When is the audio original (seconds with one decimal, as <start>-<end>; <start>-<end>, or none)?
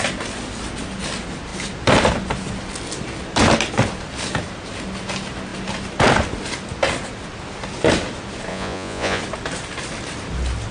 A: 0.0-8.5; 9.2-10.7